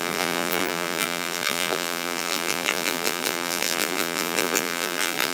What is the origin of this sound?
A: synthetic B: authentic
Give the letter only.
A